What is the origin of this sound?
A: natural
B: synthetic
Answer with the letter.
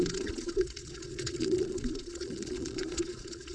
B